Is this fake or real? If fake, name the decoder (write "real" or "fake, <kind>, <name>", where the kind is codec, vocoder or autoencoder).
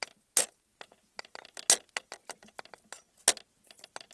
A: real